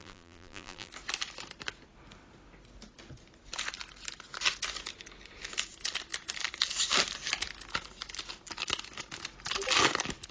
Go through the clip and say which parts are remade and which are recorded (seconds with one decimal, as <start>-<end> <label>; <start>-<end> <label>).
0.0-0.9 remade; 0.9-10.3 recorded